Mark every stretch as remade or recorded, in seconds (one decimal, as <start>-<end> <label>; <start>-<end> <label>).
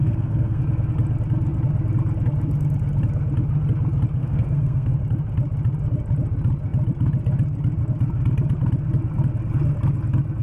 0.0-0.6 remade; 0.6-4.2 recorded; 4.2-5.0 remade; 5.0-10.4 recorded